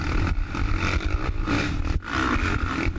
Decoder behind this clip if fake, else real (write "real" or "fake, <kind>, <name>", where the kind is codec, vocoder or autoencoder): real